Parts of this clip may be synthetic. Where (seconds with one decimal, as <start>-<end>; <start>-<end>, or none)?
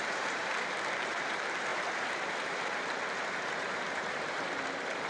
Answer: 0.0-0.4; 0.9-5.1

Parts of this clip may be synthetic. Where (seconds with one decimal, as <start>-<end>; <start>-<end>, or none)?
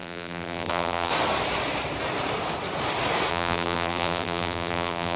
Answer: 0.0-1.1; 3.3-5.2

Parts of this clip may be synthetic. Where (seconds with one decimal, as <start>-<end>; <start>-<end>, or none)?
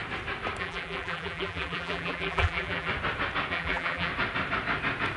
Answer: 0.6-2.9; 3.5-4.1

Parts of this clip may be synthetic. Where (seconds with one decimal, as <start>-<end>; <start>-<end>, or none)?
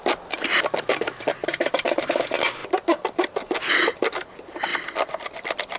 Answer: 1.4-2.2; 4.7-5.8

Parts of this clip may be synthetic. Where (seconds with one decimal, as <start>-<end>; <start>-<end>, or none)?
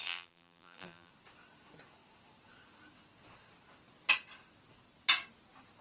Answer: 0.0-1.1